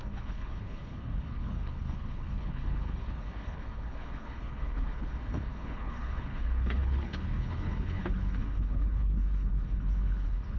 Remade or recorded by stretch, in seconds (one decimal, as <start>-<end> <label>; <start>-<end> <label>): 0.0-10.6 remade